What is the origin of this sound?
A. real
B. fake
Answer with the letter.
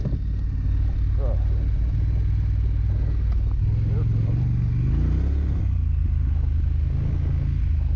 A